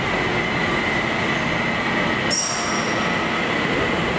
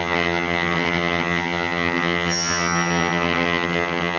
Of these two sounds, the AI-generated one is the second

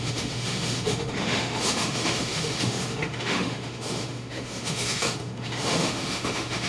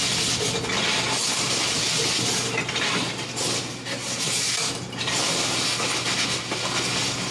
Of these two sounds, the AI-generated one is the first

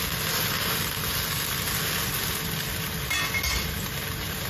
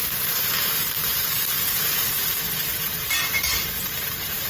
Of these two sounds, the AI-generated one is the second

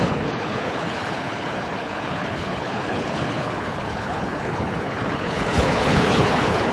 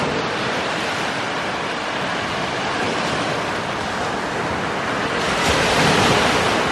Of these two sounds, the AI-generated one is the first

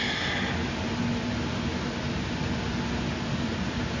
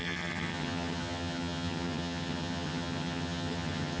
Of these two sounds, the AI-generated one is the second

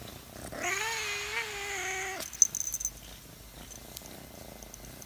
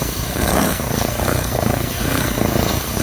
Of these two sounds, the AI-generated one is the second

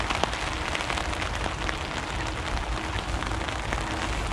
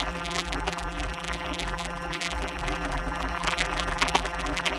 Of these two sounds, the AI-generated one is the second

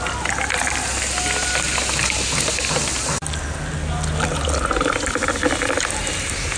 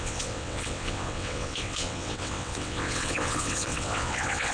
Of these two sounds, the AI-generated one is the second